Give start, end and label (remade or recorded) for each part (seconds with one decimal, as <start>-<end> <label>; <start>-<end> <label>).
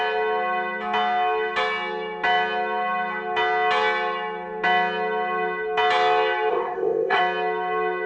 0.0-6.5 recorded; 6.5-7.2 remade; 7.2-8.1 recorded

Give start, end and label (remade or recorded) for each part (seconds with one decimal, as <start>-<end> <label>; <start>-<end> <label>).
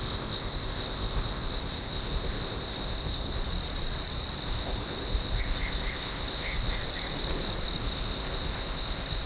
0.0-3.4 remade; 3.4-4.4 recorded; 4.4-6.8 remade; 6.8-7.8 recorded; 7.8-9.3 remade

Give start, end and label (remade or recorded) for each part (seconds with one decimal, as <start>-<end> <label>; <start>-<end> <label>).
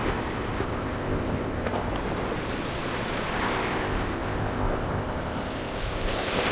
0.0-1.9 remade; 1.9-3.3 recorded; 3.3-6.5 remade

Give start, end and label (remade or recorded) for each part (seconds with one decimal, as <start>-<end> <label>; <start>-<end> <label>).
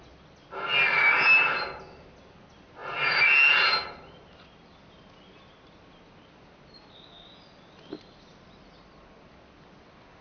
0.0-10.2 recorded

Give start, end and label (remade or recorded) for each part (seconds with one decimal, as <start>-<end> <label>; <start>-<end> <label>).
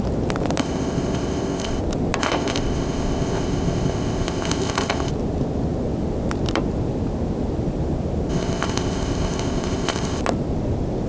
0.0-0.6 recorded; 0.6-1.8 remade; 1.8-2.2 recorded; 2.2-5.1 remade; 5.1-8.3 recorded; 8.3-10.2 remade; 10.2-11.1 recorded